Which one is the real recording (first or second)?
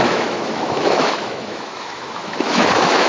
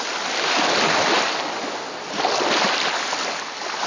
second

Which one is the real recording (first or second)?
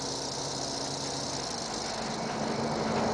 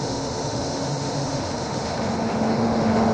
first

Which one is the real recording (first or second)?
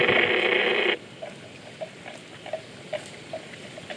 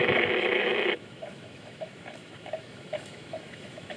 first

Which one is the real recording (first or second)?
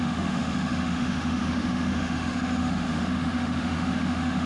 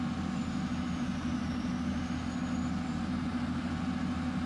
second